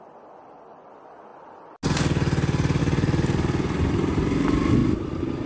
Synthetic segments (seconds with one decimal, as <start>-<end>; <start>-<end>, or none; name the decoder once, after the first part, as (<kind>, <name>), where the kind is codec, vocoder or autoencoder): none